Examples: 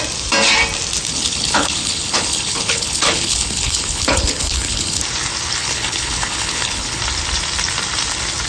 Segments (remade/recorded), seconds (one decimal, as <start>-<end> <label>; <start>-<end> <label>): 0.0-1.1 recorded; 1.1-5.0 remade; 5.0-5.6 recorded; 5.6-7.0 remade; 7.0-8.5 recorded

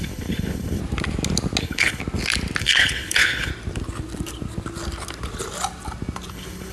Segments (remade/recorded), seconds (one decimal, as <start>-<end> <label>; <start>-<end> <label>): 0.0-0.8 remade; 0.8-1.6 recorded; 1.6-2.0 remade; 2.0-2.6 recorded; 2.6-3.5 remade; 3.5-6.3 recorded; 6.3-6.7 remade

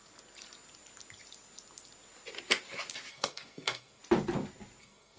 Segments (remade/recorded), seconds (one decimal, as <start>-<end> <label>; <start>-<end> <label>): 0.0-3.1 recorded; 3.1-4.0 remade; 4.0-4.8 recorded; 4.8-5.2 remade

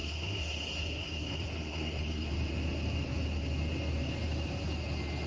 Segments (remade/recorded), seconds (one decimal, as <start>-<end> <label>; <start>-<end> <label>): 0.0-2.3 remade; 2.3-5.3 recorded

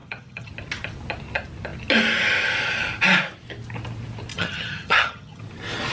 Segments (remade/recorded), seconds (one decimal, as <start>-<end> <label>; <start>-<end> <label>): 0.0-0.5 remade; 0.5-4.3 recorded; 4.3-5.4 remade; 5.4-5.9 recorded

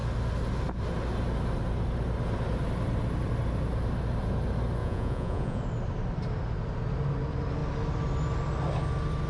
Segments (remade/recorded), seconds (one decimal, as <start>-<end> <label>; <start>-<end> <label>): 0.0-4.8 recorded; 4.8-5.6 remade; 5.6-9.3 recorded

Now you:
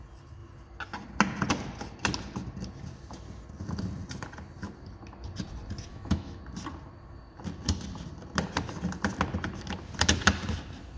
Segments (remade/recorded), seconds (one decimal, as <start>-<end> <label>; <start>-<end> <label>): 0.0-5.9 recorded; 5.9-6.4 remade; 6.4-11.0 recorded